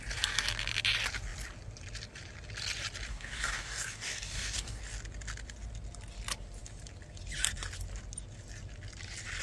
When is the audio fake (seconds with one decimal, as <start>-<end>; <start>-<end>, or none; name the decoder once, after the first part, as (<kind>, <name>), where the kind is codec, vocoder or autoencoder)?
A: 3.1-4.8 (codec, DAC)